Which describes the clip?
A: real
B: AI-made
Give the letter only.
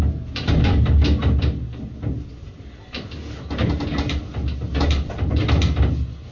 A